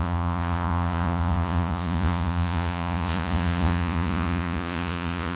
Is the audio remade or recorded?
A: remade